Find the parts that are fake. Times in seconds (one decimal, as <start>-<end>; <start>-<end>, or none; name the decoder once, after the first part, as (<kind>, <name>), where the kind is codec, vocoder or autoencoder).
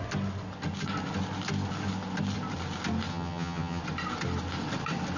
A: 3.1-3.8 (vocoder, HiFi-GAN)